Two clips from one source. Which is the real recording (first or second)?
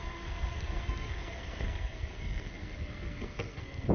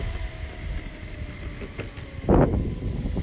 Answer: second